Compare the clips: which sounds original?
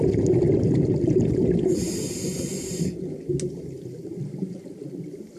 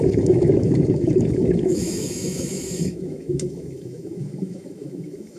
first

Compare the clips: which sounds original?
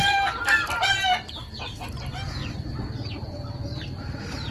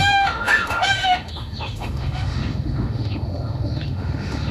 first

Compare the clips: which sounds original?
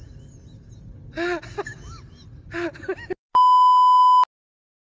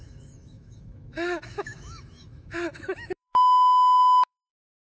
first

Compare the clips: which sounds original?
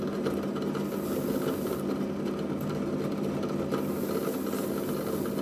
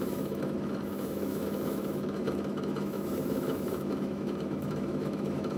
first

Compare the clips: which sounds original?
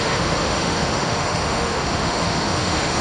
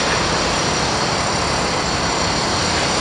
second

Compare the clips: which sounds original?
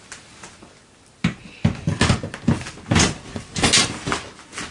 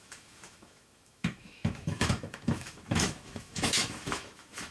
first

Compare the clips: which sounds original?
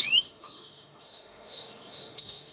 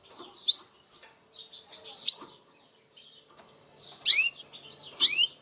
second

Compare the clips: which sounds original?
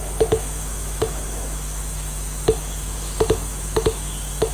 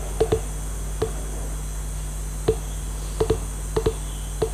second